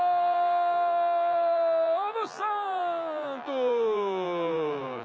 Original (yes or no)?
no